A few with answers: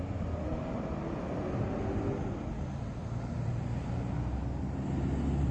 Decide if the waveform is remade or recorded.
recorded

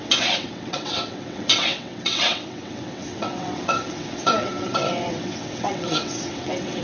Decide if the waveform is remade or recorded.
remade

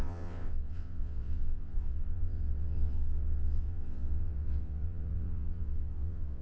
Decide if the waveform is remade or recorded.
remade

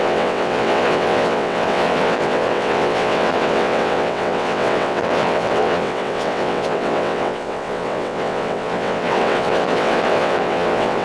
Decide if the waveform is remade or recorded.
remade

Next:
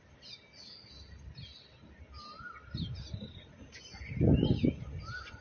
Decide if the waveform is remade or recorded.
recorded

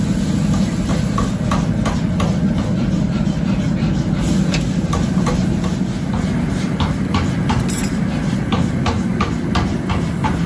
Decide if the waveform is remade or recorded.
recorded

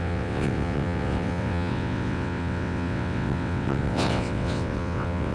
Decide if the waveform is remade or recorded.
remade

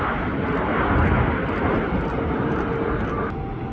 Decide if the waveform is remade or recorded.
recorded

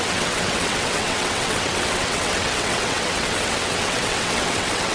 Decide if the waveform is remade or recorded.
remade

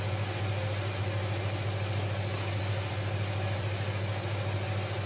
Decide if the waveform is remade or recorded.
recorded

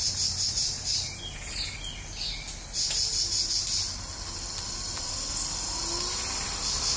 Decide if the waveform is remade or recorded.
recorded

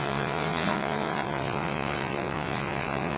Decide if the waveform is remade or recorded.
remade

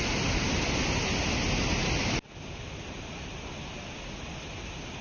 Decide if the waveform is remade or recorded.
recorded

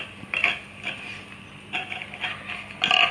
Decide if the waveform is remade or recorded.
recorded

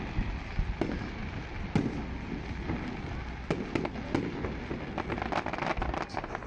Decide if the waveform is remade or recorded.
recorded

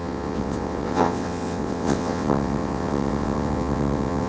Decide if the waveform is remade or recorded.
remade